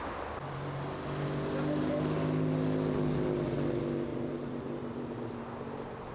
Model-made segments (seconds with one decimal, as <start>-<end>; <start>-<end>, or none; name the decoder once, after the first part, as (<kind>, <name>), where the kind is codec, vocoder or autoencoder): 4.1-5.4 (vocoder, BigVGAN v2)